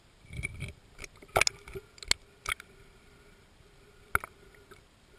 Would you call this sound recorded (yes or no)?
yes